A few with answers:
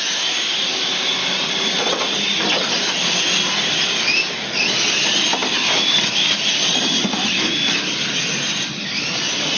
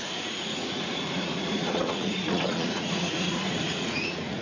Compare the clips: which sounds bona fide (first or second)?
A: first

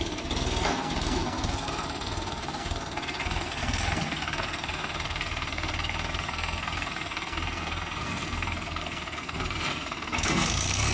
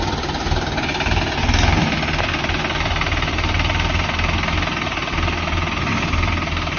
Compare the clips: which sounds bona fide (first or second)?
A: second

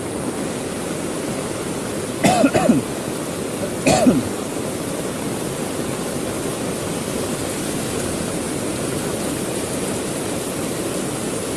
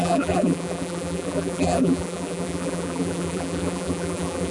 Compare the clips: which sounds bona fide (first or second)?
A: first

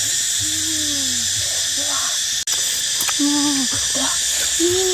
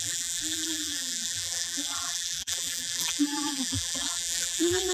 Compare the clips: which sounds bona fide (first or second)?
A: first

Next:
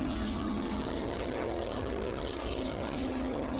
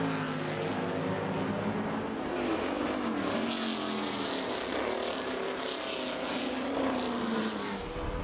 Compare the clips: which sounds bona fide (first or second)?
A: second